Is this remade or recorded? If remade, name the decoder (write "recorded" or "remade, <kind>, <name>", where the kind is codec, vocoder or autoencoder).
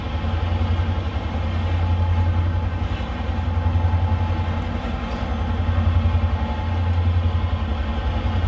recorded